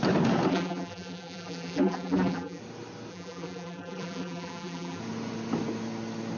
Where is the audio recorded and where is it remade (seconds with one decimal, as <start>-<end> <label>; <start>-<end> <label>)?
0.0-0.5 recorded; 0.5-2.6 remade; 2.6-3.1 recorded; 3.1-5.0 remade; 5.0-6.4 recorded